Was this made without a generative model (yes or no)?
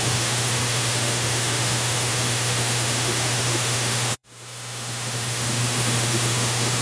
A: no